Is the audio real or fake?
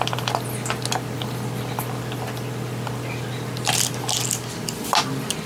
real